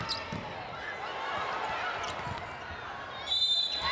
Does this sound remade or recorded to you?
recorded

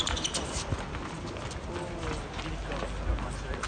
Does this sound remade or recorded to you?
recorded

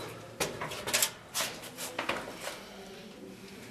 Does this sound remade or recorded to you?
recorded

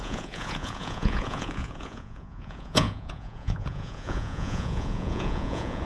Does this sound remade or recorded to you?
remade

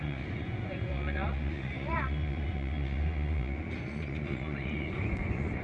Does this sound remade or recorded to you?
remade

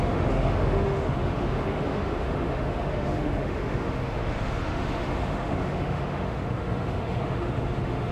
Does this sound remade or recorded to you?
remade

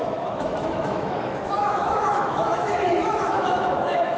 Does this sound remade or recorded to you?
remade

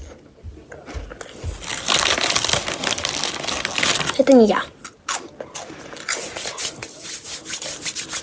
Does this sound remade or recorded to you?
recorded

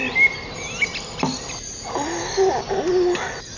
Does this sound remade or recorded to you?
recorded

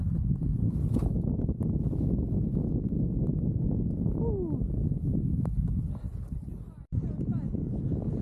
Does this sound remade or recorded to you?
recorded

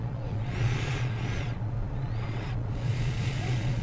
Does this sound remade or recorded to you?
remade